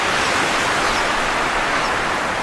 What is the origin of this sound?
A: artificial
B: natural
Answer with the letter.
B